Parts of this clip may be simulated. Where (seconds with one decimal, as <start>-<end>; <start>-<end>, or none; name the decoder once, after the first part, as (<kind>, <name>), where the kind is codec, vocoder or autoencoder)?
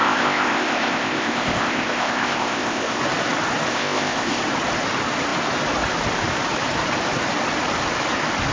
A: 0.0-3.0 (codec, ZipCodec); 3.7-4.4